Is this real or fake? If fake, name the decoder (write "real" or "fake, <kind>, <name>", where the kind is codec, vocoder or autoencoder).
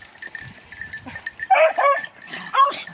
real